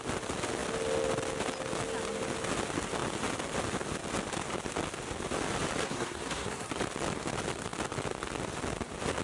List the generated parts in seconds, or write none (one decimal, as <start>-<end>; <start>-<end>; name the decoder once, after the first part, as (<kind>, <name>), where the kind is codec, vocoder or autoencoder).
5.8-6.7 (codec, SNAC)